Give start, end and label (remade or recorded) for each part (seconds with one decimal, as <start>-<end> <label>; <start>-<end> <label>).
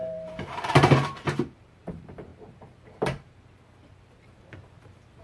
0.0-5.2 remade